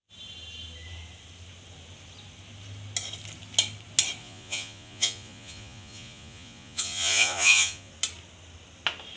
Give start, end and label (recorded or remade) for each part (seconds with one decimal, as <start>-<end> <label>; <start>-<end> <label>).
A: 0.0-4.2 recorded; 4.2-7.9 remade; 7.9-9.2 recorded